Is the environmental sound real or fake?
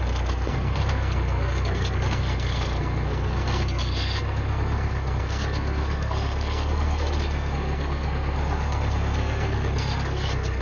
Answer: fake